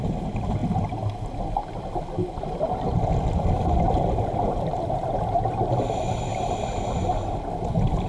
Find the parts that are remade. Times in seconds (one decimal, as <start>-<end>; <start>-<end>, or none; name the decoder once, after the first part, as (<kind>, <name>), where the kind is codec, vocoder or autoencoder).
none